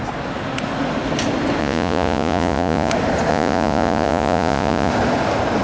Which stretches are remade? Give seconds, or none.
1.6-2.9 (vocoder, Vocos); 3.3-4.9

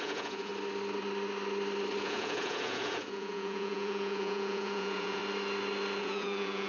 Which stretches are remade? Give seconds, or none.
0.0-0.5 (vocoder, Vocos); 2.0-5.2; 6.0-6.7

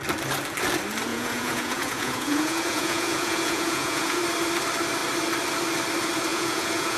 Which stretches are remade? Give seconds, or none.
1.1-4.2 (vocoder, Vocos); 6.3-7.0